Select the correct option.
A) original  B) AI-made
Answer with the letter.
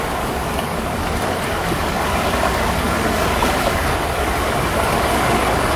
B